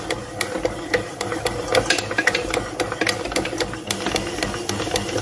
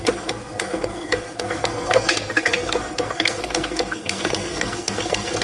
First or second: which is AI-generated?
second